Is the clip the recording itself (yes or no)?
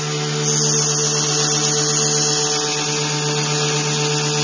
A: yes